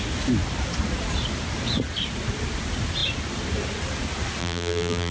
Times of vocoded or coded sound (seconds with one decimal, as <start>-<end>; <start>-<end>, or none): 4.4-5.1